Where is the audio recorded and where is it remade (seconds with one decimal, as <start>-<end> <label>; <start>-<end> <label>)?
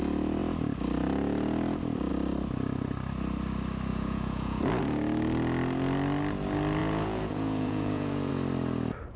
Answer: 0.0-3.9 recorded; 3.9-4.6 remade; 4.6-6.8 recorded; 6.8-8.3 remade; 8.3-9.2 recorded